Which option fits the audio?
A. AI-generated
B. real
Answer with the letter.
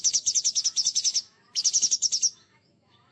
A